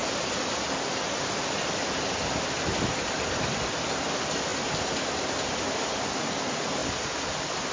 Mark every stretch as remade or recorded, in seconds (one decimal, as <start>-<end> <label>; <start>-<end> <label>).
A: 0.0-7.7 recorded